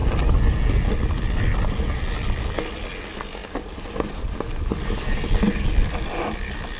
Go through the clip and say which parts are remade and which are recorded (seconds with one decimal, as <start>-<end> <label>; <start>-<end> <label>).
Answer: 0.0-6.8 recorded